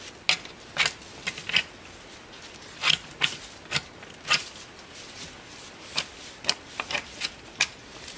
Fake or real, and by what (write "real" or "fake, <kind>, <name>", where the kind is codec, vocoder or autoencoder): real